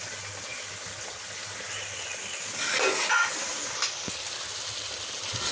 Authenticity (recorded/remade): recorded